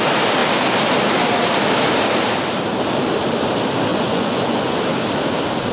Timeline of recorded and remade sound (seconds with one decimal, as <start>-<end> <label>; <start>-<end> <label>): 0.0-3.9 recorded; 3.9-4.8 remade; 4.8-5.7 recorded